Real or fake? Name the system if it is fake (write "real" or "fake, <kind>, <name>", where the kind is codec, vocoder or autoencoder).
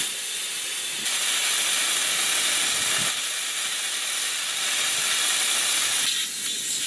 real